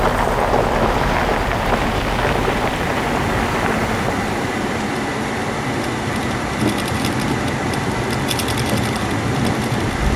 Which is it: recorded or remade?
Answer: remade